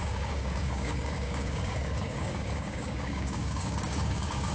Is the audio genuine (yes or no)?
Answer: no